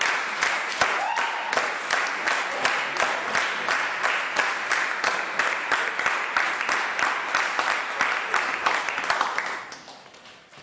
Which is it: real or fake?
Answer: real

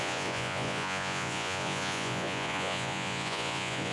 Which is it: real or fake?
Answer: fake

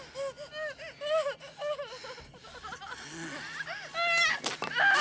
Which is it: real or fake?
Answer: real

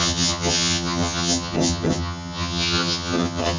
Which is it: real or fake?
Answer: fake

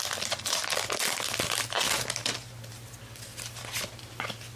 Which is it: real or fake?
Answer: real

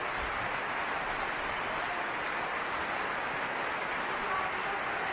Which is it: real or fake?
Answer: real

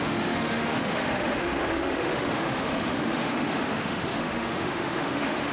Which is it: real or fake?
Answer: fake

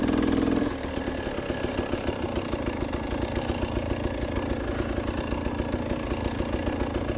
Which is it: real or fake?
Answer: real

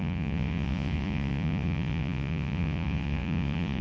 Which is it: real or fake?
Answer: fake